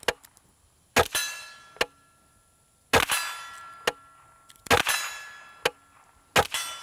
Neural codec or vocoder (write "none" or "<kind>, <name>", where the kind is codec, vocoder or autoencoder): none